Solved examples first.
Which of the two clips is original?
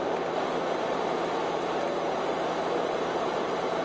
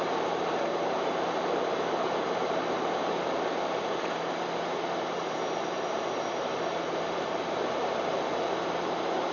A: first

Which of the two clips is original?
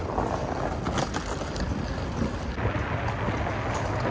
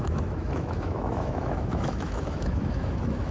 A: first